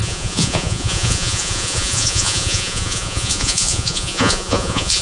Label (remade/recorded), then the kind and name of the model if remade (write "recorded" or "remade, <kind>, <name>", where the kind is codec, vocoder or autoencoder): remade, vocoder, Vocos